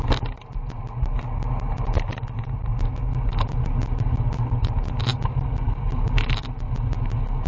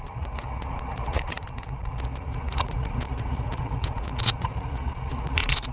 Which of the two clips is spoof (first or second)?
second